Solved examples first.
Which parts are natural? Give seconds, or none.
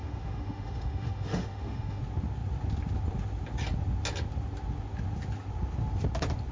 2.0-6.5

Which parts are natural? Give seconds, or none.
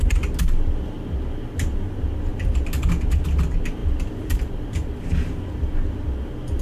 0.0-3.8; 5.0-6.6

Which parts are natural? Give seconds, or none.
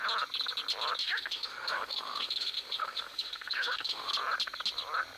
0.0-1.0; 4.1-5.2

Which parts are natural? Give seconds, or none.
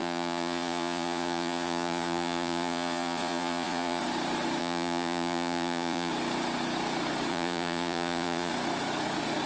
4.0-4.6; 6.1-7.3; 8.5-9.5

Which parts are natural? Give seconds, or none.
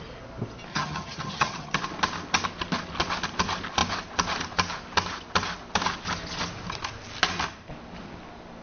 0.0-0.7; 1.8-8.6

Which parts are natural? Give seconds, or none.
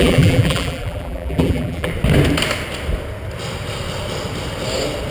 1.9-5.1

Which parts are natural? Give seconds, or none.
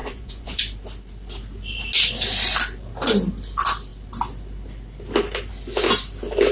0.6-6.5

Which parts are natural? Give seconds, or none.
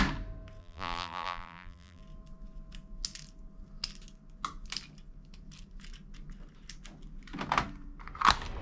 0.0-0.6; 2.0-8.6